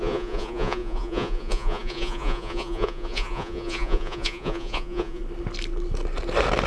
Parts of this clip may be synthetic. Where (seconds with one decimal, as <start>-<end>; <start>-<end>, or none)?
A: 0.0-5.2